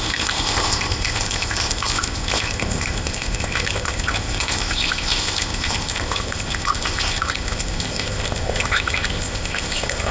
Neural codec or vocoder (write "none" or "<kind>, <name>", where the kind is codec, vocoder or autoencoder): codec, ZipCodec